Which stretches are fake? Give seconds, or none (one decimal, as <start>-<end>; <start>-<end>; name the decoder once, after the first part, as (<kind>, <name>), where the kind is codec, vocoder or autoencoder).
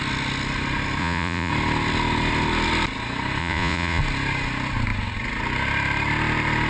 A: 1.0-1.5 (vocoder, Vocos); 3.4-4.0